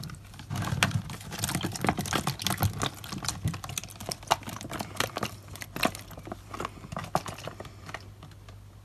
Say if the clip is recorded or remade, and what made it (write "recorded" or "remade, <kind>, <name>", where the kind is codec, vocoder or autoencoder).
recorded